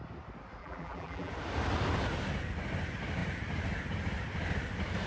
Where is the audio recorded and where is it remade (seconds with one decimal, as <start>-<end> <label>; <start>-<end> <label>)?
0.0-0.6 recorded; 0.6-1.3 remade; 1.3-5.1 recorded